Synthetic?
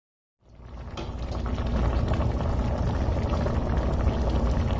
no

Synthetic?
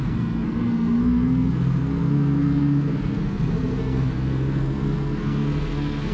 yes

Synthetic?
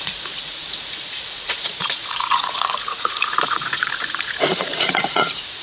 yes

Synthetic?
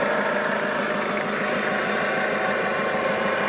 no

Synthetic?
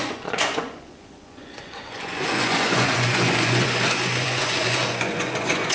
yes